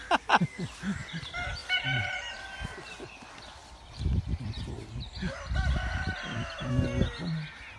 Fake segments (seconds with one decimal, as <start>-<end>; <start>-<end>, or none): 1.6-2.4; 3.6-6.7